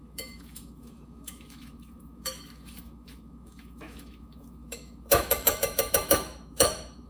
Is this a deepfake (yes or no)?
yes